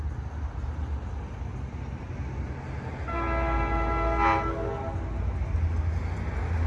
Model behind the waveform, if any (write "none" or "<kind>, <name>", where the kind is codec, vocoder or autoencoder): none